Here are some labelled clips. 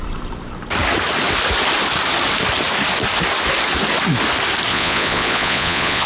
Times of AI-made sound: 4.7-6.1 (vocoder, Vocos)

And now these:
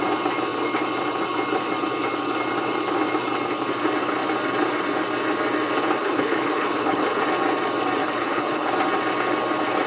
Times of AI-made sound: 6.0-7.2 (codec, HILCodec); 8.0-8.7

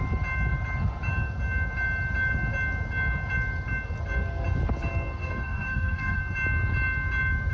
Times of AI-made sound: 5.2-6.2 (codec, SNAC)

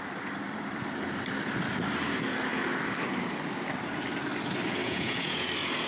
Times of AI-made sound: 4.8-5.5 (vocoder, Vocos)

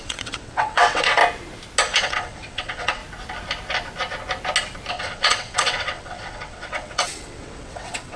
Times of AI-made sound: 0.0-1.2 (vocoder, WaveNeXt); 2.0-3.0; 4.9-8.2

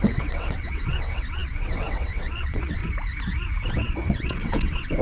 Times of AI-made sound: 0.0-2.8 (vocoder, WaveNeXt); 3.7-5.0